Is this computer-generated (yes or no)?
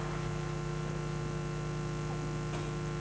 no